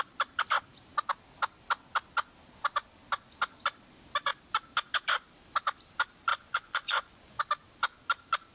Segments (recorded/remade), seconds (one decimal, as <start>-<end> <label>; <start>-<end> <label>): 0.0-6.3 recorded; 6.3-7.4 remade; 7.4-8.5 recorded